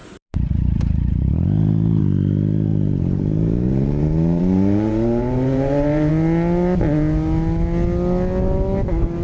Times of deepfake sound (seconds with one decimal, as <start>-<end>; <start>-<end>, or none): 0.0-2.0; 2.7-6.1